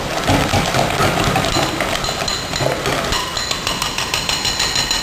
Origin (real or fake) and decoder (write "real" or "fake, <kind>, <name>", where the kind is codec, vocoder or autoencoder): real